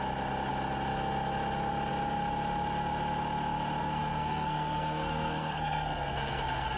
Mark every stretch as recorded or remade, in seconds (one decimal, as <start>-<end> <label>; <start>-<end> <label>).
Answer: 0.0-3.8 recorded; 3.8-6.8 remade